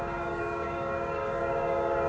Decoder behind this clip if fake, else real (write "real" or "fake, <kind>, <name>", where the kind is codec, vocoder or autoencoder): fake, codec, DAC